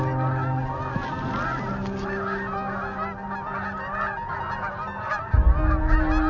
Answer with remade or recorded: recorded